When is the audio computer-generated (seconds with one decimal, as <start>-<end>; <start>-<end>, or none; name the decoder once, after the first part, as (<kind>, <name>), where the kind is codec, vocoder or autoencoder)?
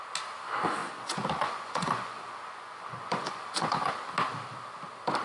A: 0.8-3.9 (vocoder, Vocos)